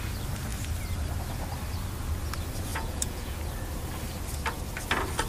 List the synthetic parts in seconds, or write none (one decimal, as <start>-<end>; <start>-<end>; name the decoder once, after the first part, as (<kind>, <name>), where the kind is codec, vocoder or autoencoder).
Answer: 2.7-3.4 (vocoder, Vocos)